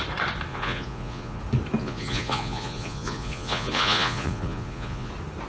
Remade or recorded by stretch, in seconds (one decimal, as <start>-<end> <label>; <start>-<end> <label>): 0.0-0.5 recorded; 0.5-1.4 remade; 1.4-1.8 recorded; 1.8-5.1 remade; 5.1-5.5 recorded